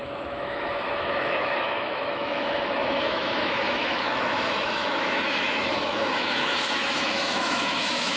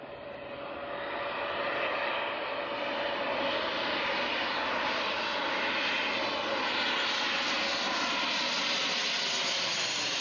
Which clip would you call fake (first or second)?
first